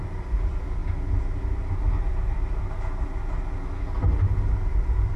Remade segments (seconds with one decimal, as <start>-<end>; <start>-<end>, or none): 0.0-0.8; 2.1-2.5; 4.7-5.2